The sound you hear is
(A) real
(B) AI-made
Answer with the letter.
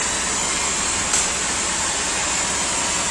A